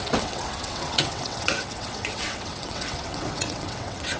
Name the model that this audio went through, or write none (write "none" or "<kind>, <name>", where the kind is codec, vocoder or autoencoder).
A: vocoder, WaveNeXt